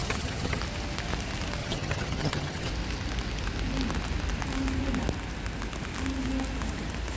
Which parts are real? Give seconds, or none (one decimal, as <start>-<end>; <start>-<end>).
0.6-1.6; 2.7-7.2